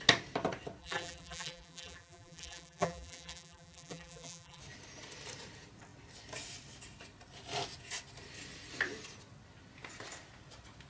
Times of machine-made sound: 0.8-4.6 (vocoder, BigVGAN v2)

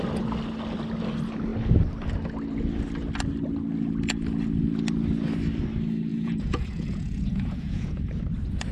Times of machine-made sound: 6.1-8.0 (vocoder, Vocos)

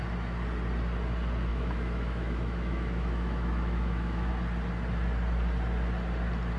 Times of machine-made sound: 1.5-4.3 (autoencoder, DAC-VAE)